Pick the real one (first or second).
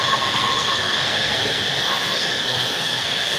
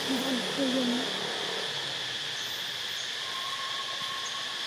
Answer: second